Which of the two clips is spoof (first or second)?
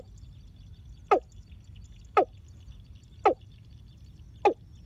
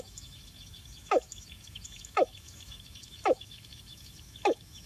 second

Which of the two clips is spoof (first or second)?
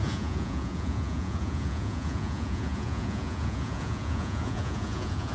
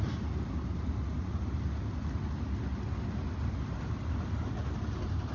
first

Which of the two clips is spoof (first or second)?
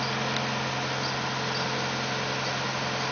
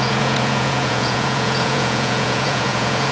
second